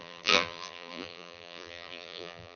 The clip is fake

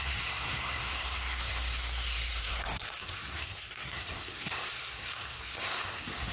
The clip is fake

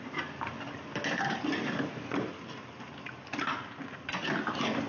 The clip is real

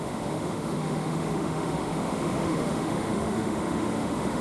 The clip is fake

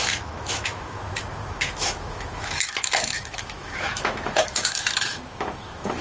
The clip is fake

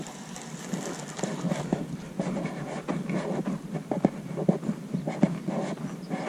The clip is real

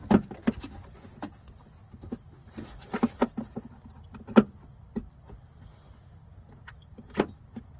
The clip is real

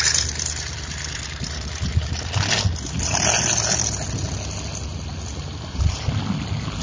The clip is real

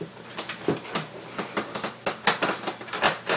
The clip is real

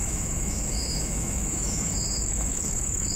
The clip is fake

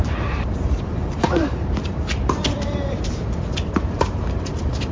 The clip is fake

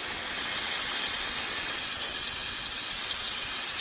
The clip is fake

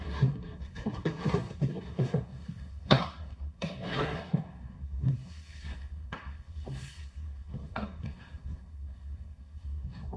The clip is fake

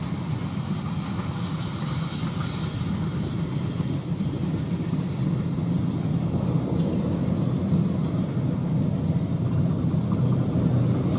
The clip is real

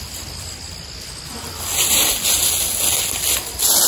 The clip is real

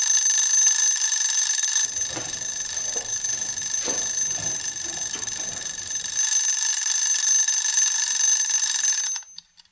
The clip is real